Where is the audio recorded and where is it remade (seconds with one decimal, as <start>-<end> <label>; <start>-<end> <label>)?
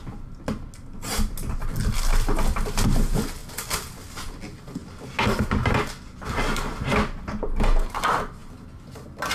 0.0-9.3 recorded